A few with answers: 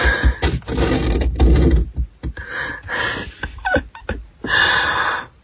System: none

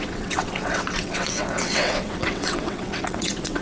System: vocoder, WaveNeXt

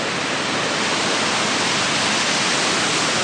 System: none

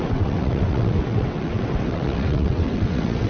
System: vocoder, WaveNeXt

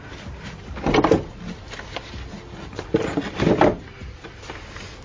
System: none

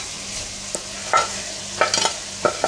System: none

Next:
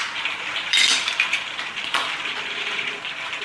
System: none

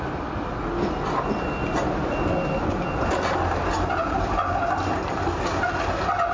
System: none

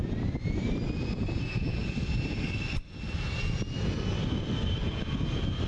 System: none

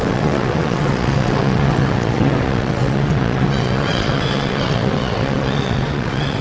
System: vocoder, WaveNeXt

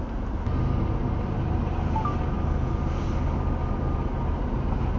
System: none